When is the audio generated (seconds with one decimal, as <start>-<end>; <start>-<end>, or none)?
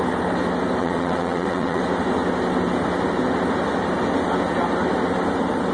0.8-1.8